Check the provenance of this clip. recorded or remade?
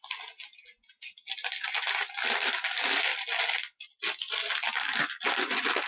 recorded